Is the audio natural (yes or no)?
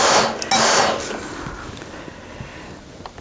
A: yes